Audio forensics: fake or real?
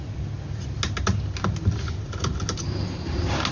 real